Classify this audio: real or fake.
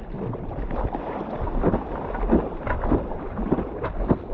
real